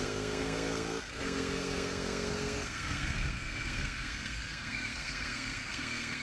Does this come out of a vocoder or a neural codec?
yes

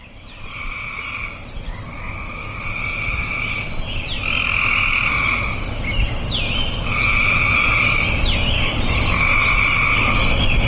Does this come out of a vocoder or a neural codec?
no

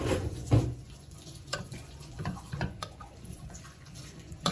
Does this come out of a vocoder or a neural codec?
yes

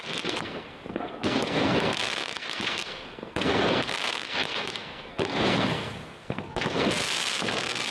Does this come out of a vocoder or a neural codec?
yes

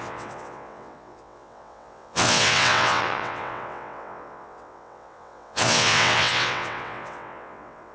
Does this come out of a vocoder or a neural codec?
yes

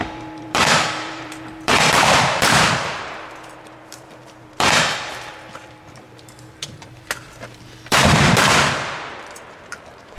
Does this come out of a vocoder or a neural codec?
yes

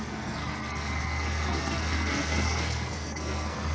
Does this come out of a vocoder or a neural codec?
yes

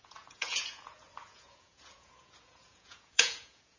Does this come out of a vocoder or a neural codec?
yes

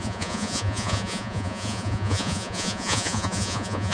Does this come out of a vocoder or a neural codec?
yes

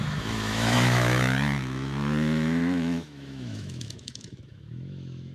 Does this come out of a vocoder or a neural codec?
yes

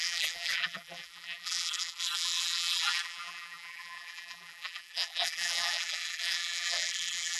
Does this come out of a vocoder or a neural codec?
yes